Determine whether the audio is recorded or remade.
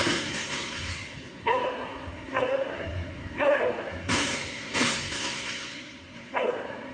remade